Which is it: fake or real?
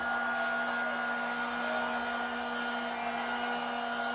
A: real